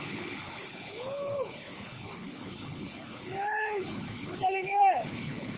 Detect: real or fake fake